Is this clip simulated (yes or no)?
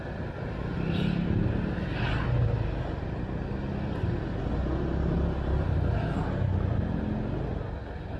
no